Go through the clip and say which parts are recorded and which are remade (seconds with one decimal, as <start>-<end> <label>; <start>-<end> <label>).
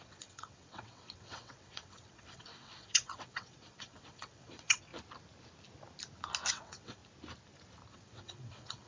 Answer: 0.0-4.9 remade; 4.9-6.5 recorded; 6.5-7.0 remade; 7.0-7.9 recorded; 7.9-8.9 remade